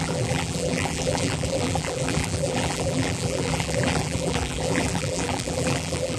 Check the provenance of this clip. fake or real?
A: fake